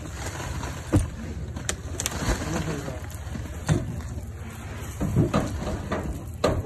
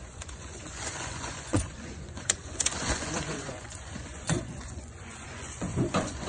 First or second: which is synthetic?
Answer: second